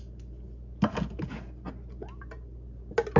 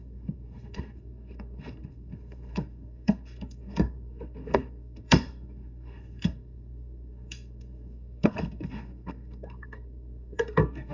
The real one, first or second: first